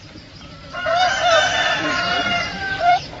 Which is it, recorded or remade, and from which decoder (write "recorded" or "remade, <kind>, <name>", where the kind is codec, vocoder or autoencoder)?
remade, vocoder, BigVGAN v2